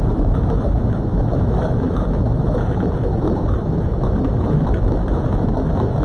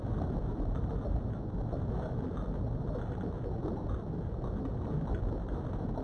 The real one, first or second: second